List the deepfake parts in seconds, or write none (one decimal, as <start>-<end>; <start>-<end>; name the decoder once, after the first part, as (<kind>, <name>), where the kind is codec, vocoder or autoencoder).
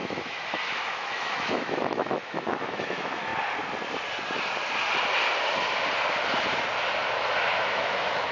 0.0-3.3 (autoencoder, DAC-VAE); 7.7-8.3